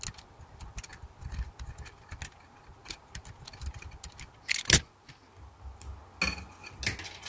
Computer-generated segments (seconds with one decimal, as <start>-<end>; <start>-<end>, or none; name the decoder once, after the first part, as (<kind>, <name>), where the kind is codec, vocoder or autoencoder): none